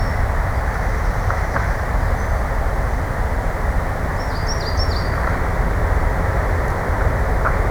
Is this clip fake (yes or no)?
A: no